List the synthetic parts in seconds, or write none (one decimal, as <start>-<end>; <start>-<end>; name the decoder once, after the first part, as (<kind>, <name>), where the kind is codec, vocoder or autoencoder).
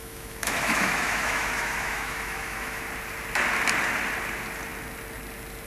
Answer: 0.0-2.8 (autoencoder, DAC-VAE)